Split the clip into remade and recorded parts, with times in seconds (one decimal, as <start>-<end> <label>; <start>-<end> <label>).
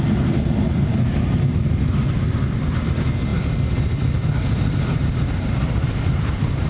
0.0-6.7 recorded